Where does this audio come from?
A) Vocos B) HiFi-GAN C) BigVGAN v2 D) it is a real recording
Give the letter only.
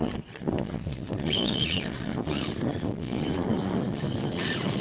A